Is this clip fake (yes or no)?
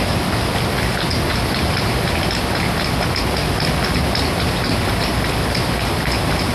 no